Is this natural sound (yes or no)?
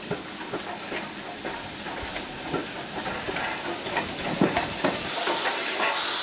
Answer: yes